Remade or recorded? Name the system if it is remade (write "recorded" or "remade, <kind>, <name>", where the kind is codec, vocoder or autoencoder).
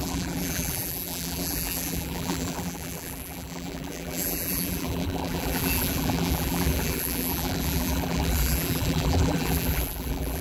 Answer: remade, vocoder, BigVGAN v2